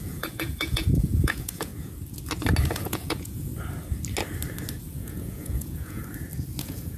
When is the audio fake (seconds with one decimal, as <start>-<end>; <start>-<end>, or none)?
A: 0.0-1.7; 2.7-3.5; 4.8-6.0; 6.6-7.0

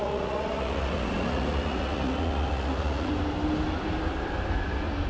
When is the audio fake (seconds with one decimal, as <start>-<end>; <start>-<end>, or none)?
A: 0.0-3.1

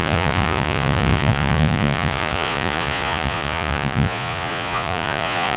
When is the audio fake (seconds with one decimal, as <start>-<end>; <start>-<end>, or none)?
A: 0.0-5.6

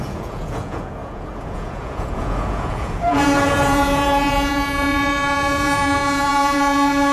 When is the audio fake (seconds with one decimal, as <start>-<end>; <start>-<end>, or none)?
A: 0.0-7.1

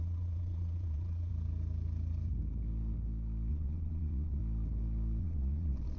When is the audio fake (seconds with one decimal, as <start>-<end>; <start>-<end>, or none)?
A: 0.0-1.3; 3.5-4.4; 5.2-6.0

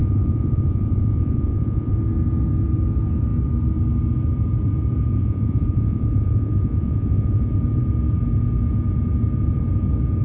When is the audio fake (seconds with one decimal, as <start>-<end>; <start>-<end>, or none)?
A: 0.0-1.9; 5.2-7.5

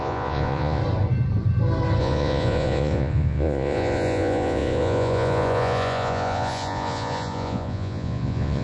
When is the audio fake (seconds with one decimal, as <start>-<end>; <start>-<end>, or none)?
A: 0.0-0.8; 2.0-8.6